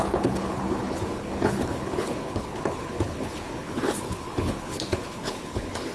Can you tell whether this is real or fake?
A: fake